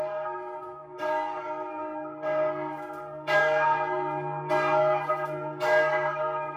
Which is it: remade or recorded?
remade